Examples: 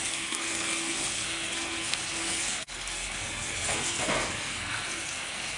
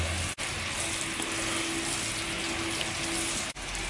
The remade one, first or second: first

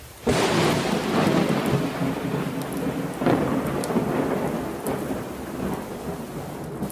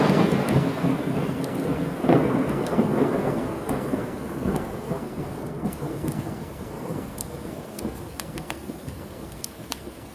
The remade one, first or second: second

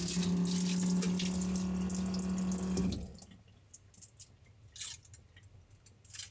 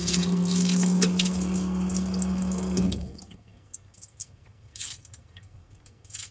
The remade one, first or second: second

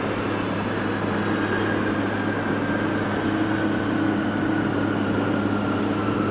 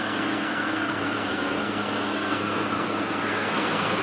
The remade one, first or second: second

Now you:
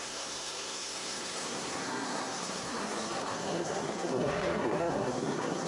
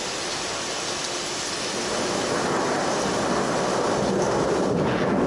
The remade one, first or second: first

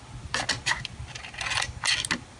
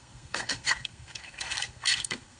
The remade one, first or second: second